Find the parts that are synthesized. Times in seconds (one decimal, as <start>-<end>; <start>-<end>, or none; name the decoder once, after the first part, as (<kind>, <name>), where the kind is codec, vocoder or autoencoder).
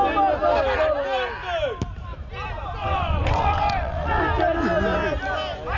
2.8-4.2 (vocoder, WaveNeXt)